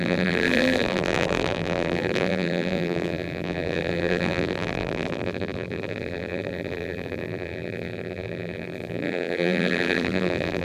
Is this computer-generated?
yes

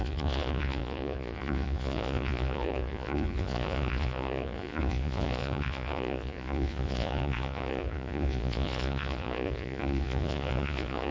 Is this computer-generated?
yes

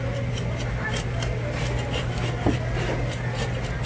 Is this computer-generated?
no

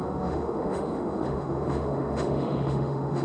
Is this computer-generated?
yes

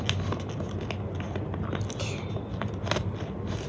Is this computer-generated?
no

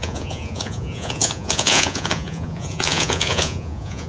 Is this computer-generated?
yes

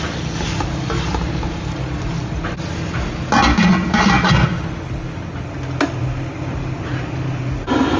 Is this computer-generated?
no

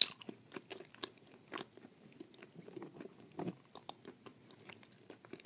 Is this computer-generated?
no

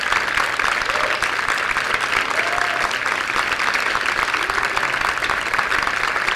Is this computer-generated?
no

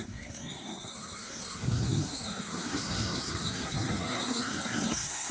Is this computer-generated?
yes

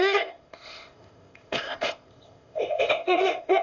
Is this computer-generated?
yes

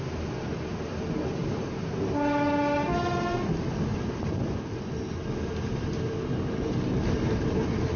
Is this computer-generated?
no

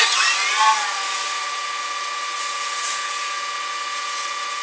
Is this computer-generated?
no